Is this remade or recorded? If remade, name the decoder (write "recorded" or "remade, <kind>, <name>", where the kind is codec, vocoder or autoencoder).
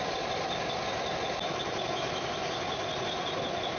recorded